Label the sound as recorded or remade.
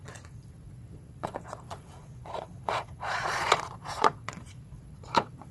remade